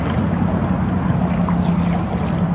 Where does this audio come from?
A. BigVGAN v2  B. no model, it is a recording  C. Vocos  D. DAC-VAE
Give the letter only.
B